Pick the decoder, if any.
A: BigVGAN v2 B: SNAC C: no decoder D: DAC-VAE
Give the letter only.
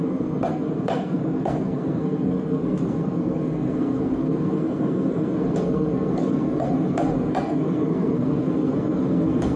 B